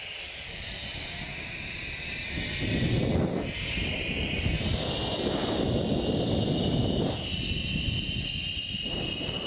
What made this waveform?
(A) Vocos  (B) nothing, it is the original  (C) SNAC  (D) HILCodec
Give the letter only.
B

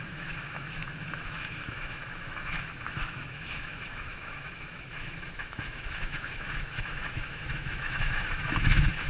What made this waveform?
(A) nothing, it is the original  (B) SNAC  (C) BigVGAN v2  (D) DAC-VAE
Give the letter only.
D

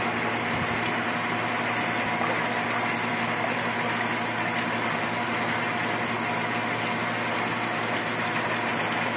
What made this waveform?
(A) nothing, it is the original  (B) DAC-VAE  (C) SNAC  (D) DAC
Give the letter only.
A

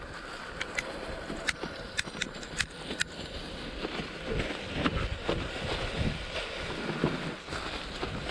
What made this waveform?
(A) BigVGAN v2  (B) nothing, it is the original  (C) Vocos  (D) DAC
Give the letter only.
B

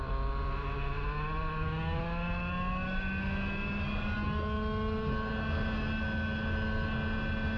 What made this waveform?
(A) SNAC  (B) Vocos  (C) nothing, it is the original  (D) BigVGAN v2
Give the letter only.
C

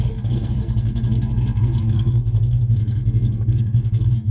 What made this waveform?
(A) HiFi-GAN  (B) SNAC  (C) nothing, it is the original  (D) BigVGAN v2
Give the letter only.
B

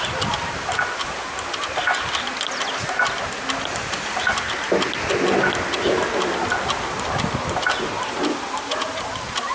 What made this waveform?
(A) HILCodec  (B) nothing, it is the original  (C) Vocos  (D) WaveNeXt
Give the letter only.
B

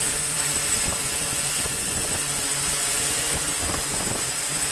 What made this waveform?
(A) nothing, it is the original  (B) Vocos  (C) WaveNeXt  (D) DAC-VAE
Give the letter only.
B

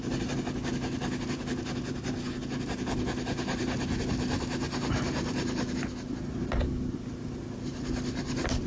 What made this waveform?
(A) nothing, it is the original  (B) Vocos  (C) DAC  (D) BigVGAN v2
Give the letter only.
A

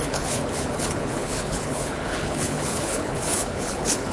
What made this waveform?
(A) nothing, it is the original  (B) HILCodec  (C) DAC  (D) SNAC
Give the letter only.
B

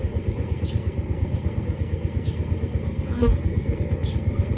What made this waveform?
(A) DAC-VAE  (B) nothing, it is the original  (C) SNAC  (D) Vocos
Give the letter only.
C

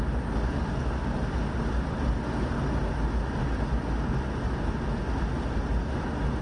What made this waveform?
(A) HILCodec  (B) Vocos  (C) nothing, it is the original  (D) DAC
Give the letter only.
C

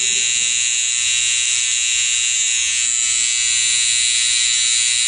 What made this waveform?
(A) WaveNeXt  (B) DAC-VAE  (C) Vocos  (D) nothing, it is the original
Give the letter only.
D